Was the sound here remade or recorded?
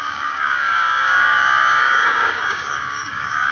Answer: remade